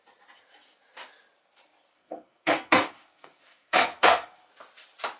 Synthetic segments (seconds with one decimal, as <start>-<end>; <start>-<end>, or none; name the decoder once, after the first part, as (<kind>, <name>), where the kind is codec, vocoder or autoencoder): 1.9-4.5 (codec, SNAC)

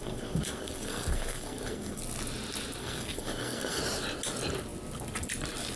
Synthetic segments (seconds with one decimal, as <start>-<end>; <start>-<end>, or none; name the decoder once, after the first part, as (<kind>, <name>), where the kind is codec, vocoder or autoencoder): 0.0-2.0 (codec, SNAC); 2.8-3.8

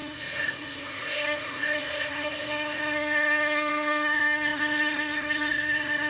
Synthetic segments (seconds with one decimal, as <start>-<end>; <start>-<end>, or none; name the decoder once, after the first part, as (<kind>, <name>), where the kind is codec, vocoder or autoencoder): 0.0-6.1 (codec, SNAC)

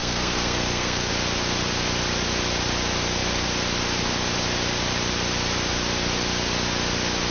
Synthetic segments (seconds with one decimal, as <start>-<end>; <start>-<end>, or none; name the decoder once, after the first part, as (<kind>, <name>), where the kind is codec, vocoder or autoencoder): 0.0-1.1 (codec, SNAC)

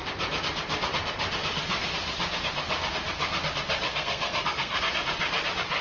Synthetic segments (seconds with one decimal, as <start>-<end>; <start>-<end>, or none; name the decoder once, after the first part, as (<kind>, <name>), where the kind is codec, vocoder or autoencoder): 3.9-4.8 (codec, SNAC)